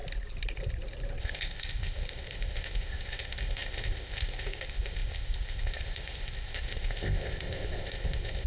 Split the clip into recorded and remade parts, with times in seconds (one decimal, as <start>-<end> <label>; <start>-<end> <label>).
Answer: 0.0-1.2 recorded; 1.2-8.5 remade